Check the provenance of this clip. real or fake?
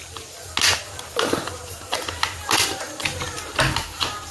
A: real